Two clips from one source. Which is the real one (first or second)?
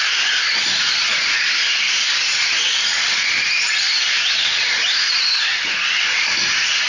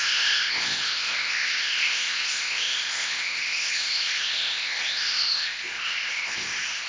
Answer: first